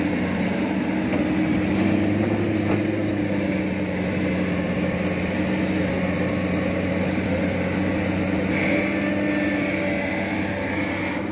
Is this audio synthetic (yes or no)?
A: no